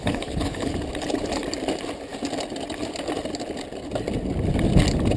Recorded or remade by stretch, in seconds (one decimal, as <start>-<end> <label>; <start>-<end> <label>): 0.0-0.7 remade; 0.7-5.2 recorded